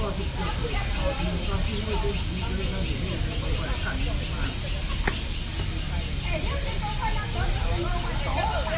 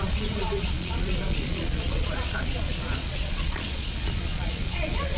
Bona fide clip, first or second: first